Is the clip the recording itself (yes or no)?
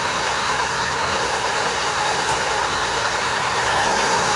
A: no